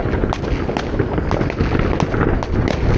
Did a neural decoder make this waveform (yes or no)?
no